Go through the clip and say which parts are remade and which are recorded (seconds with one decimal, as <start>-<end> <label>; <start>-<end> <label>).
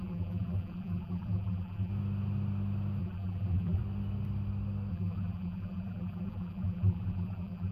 0.0-1.9 remade; 1.9-3.0 recorded; 3.0-3.8 remade; 3.8-4.9 recorded; 4.9-7.7 remade